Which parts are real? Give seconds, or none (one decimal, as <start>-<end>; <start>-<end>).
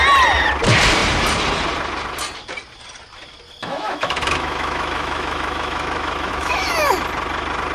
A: 0.0-3.6; 6.9-7.7